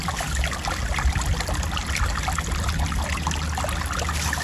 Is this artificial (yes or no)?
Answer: no